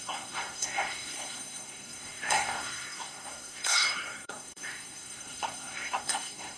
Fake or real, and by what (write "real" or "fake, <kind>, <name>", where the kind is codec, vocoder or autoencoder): fake, codec, SNAC